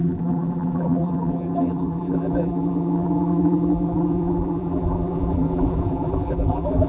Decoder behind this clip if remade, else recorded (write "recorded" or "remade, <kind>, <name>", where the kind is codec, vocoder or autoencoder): remade, vocoder, BigVGAN v2